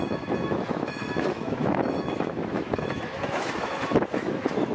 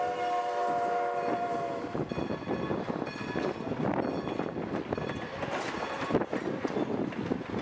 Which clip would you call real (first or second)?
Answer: second